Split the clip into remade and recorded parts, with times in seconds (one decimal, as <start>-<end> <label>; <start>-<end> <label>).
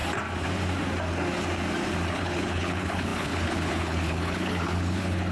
0.0-2.1 recorded; 2.1-5.3 remade